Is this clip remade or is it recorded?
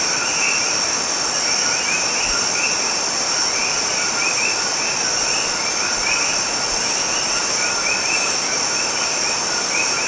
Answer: recorded